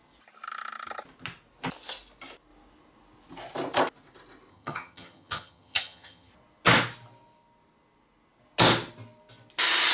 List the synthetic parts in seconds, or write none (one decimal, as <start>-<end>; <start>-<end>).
4.5-6.3